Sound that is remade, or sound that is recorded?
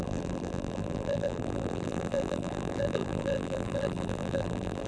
remade